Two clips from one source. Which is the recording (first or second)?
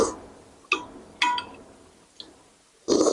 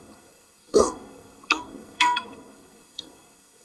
first